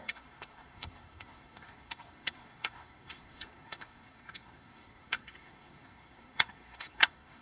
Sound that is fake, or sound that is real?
fake